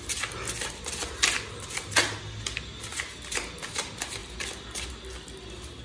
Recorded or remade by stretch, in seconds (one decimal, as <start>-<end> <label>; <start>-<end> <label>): 0.0-5.8 recorded